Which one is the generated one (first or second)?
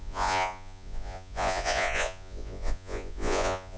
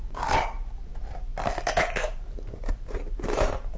first